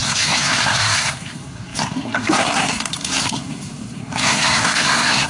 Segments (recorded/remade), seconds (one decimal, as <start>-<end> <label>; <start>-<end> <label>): 0.0-5.3 remade